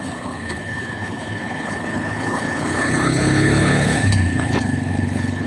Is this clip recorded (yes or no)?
no